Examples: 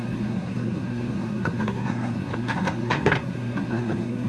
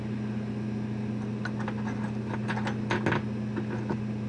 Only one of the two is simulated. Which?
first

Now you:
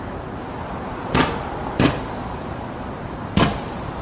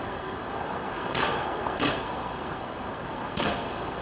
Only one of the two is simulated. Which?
second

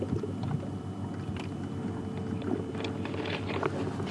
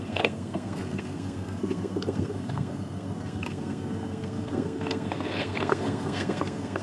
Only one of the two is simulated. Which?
second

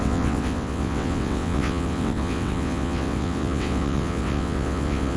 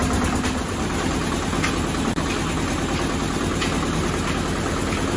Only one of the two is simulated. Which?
first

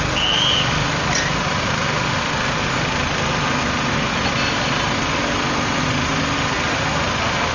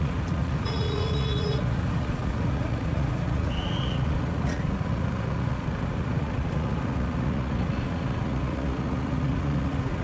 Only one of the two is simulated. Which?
second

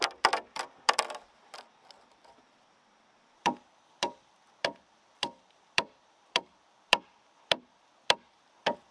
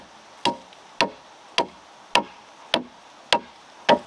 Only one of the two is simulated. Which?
first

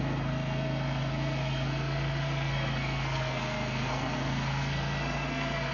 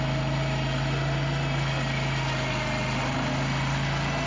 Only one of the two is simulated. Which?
first